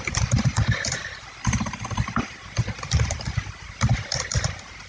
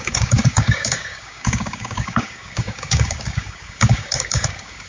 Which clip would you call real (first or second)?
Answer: first